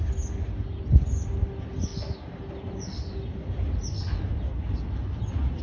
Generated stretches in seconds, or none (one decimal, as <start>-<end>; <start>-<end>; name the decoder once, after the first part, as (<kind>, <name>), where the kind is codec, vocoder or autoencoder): none